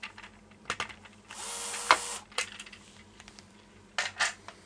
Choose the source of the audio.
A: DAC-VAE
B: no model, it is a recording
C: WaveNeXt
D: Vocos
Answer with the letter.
B